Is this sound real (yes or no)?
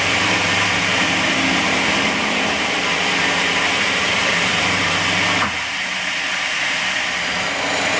no